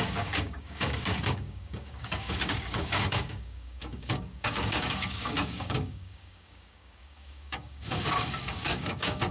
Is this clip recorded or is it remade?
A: remade